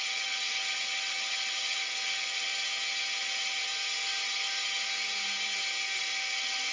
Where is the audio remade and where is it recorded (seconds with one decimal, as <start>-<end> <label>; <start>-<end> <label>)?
0.0-2.5 remade; 2.5-3.2 recorded; 3.2-3.7 remade; 3.7-6.0 recorded; 6.0-6.7 remade